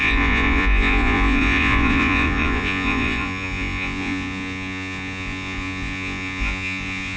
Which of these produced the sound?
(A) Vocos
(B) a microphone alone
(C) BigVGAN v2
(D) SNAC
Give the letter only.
A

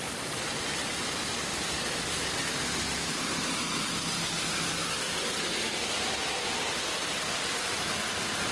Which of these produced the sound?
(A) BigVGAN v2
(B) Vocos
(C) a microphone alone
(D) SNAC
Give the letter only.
C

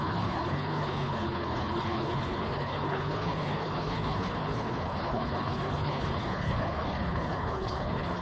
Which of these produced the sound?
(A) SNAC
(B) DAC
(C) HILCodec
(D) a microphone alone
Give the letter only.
C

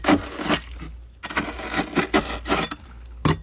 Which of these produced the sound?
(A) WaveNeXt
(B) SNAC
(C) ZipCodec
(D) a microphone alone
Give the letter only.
D